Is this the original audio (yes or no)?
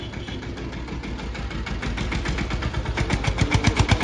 yes